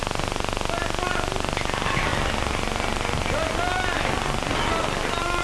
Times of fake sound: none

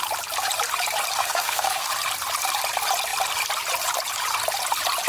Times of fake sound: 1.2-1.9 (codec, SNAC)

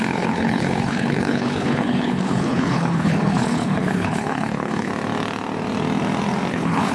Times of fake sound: 0.0-4.9 (codec, HILCodec); 6.5-6.9

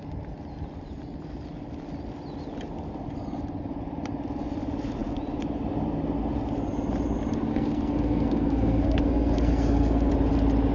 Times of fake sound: 7.5-10.1 (codec, SNAC)